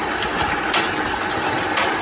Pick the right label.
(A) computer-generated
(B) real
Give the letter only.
B